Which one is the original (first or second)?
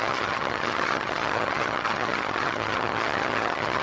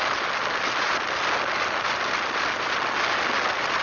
second